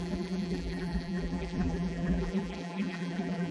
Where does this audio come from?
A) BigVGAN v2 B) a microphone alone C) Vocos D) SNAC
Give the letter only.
A